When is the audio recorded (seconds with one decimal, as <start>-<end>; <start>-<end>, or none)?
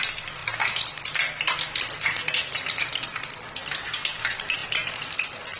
0.0-5.6